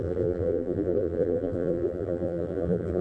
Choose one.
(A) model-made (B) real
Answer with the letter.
A